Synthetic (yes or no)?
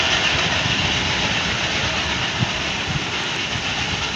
no